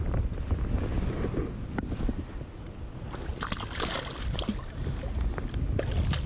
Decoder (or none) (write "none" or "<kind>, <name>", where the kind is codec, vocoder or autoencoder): none